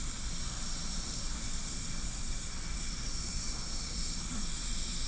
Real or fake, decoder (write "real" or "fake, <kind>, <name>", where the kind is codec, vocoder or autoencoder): real